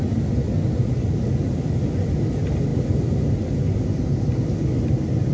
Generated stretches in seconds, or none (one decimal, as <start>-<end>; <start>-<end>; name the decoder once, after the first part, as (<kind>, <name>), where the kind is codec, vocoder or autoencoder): none

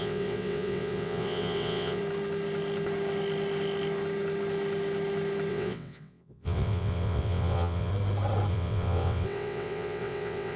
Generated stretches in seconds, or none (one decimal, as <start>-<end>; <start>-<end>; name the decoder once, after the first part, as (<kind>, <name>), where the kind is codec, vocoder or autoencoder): 0.0-2.0 (vocoder, WaveNeXt); 5.5-7.9; 8.5-10.6